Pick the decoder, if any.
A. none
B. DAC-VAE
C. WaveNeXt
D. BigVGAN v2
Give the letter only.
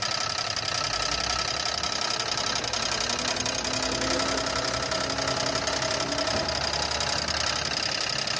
A